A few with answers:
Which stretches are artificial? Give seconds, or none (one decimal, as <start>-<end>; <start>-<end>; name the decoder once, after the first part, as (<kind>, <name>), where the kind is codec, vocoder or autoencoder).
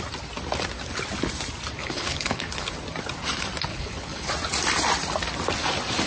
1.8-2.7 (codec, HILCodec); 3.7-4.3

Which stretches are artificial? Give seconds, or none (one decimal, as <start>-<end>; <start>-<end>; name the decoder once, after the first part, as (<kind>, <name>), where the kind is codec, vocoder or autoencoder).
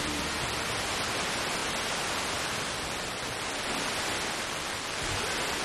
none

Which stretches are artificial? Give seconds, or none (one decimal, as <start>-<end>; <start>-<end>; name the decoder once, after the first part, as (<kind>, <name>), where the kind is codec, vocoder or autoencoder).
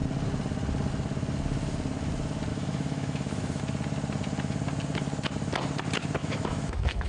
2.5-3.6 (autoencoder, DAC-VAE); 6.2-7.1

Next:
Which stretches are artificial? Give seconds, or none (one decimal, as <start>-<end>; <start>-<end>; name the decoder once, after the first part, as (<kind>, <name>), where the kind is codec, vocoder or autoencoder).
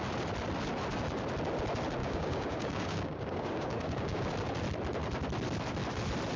2.0-4.3 (codec, DAC)